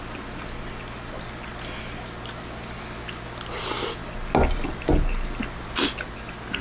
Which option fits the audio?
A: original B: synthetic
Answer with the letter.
A